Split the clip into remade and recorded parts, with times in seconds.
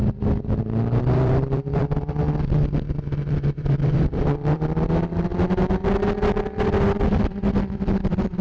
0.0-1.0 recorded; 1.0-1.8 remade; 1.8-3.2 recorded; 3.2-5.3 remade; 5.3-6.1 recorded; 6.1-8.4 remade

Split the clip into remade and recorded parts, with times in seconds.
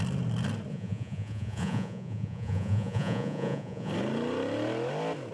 0.0-0.7 recorded; 0.7-3.9 remade; 3.9-5.3 recorded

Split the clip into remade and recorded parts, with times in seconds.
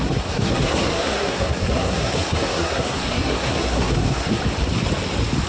0.0-4.4 remade; 4.4-5.5 recorded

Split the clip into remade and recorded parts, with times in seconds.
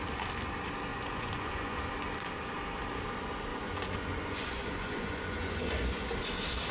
0.0-0.9 recorded; 0.9-1.8 remade; 1.8-3.5 recorded; 3.5-6.1 remade; 6.1-6.7 recorded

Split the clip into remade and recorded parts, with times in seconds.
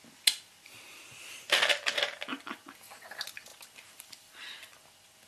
0.0-3.5 recorded; 3.5-5.3 remade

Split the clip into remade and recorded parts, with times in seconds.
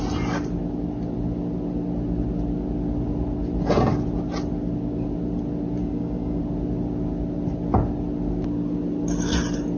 0.0-5.8 recorded; 5.8-6.4 remade; 6.4-9.8 recorded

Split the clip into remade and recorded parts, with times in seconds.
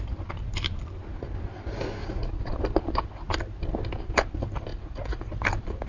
0.0-2.0 recorded; 2.0-2.6 remade; 2.6-4.7 recorded; 4.7-5.2 remade; 5.2-5.9 recorded